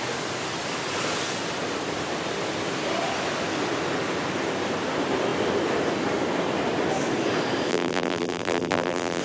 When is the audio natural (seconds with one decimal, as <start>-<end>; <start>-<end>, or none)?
0.0-7.7

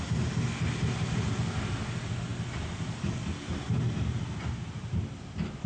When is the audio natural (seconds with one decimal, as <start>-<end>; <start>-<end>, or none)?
0.0-2.3; 4.2-5.7

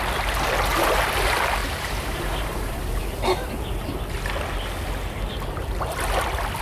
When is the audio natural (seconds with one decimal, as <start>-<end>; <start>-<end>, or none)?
0.0-1.6; 3.0-6.6